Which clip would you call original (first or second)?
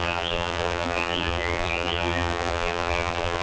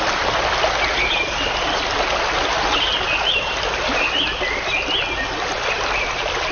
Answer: second